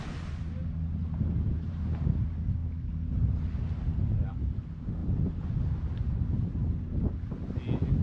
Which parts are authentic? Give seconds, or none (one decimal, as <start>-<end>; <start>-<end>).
0.0-1.0; 2.1-8.0

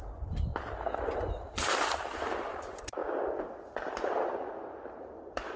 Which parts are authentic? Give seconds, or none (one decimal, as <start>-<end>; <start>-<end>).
0.5-1.3; 3.0-4.9

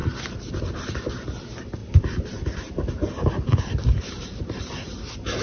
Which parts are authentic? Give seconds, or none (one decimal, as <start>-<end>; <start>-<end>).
0.5-1.8; 5.0-5.4

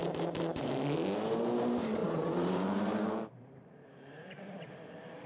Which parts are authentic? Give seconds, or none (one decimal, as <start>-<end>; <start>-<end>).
0.7-2.0

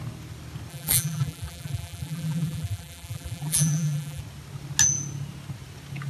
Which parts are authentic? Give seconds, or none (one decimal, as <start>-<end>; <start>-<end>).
0.0-0.7; 4.2-6.1